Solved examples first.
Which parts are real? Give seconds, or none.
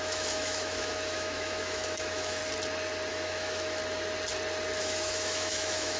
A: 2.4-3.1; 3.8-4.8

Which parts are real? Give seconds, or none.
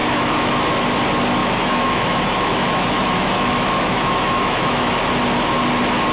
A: 0.5-1.4; 5.1-6.1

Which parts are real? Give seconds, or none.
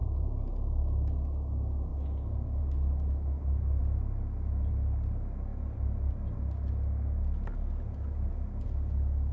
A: 0.0-9.3